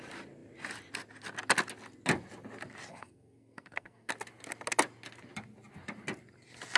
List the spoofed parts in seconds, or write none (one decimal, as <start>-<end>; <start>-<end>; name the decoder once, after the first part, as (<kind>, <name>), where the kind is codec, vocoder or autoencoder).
2.9-4.1 (codec, SNAC)